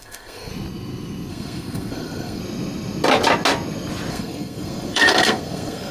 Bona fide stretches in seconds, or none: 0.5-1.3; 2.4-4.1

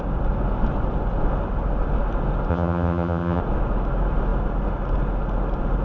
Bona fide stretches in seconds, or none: 0.0-2.5; 3.4-5.8

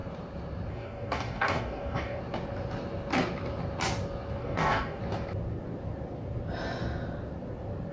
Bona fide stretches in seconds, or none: 0.0-0.7; 2.2-4.4; 5.0-7.9

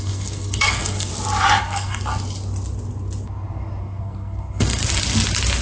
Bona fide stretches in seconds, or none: 1.1-1.6; 2.1-3.8; 4.8-5.6